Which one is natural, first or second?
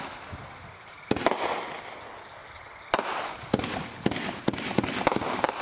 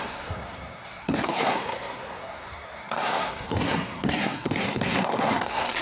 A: first